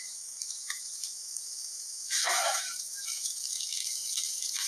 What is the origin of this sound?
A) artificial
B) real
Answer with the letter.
A